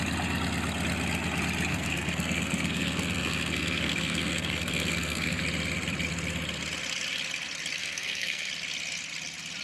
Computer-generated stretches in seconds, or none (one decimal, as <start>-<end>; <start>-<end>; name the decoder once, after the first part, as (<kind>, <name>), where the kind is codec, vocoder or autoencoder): 1.7-5.4 (codec, SNAC); 7.8-8.5